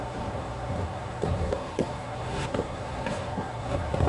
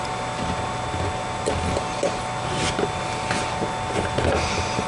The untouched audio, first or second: second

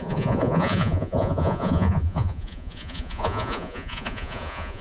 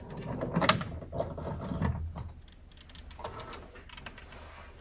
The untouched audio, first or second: second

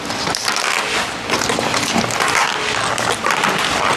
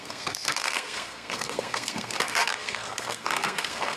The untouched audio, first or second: first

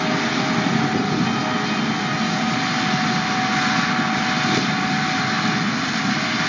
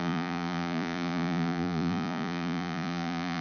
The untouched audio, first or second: first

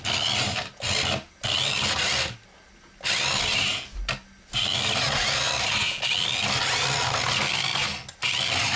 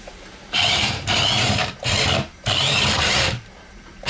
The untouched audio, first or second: first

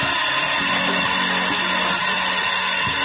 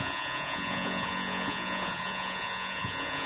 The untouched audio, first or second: first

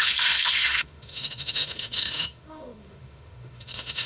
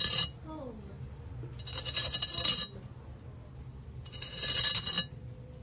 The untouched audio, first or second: second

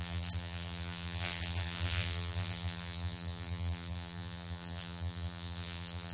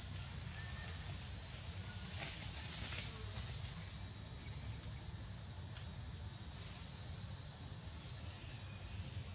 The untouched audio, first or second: second